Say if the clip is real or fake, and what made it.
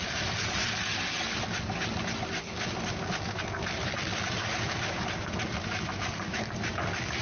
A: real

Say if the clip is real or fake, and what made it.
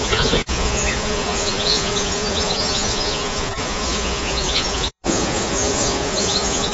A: fake, vocoder, Vocos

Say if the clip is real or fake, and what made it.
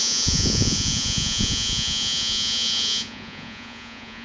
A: fake, vocoder, Vocos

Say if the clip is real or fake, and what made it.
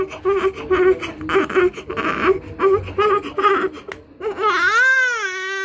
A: real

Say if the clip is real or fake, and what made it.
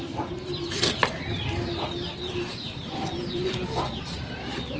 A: fake, vocoder, BigVGAN v2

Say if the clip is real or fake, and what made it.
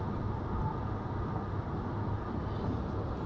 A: real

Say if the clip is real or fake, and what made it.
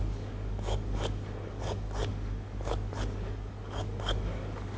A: fake, codec, DAC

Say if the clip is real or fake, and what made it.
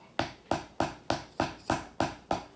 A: real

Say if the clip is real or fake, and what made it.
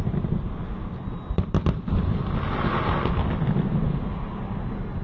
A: real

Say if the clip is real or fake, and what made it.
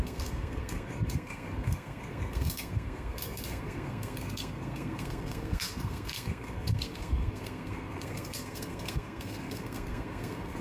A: fake, codec, SNAC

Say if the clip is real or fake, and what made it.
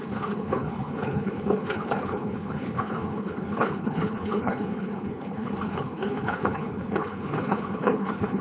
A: fake, codec, HILCodec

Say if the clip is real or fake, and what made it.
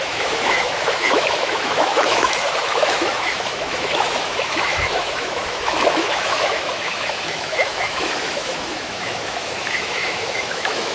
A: fake, autoencoder, DAC-VAE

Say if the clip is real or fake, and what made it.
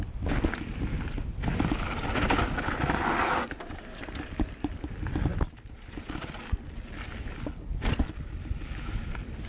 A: real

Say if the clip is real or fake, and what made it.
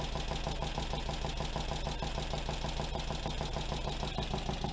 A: real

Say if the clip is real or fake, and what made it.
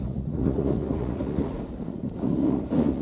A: fake, vocoder, Vocos